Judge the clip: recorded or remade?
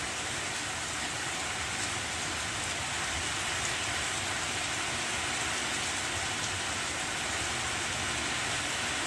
recorded